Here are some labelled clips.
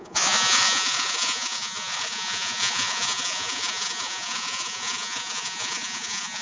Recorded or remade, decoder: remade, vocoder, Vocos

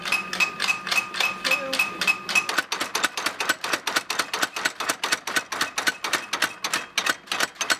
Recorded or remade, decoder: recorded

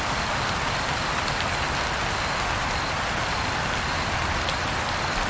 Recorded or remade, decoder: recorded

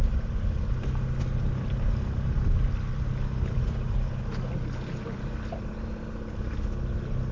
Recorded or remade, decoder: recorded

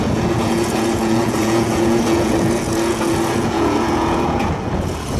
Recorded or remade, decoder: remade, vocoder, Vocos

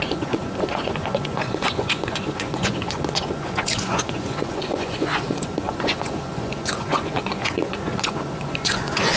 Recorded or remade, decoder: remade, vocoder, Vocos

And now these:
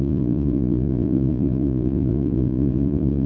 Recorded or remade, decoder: remade, vocoder, Vocos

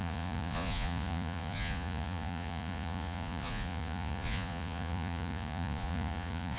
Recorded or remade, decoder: remade, vocoder, Vocos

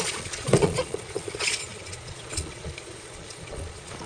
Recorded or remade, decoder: remade, vocoder, Vocos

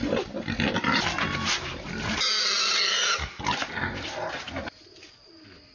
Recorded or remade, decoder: recorded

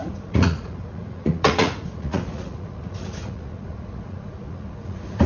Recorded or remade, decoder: remade, vocoder, Vocos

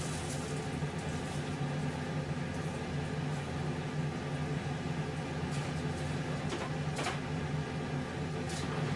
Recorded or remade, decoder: recorded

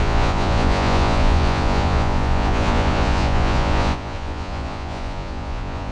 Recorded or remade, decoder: remade, vocoder, Vocos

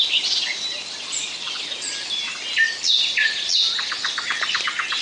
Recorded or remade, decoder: recorded